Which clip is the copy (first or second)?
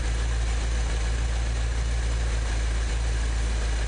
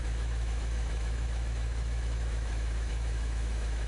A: second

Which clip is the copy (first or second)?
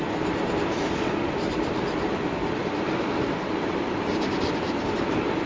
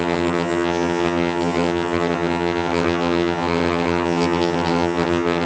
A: second